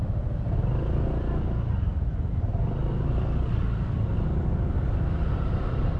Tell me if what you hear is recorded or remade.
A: recorded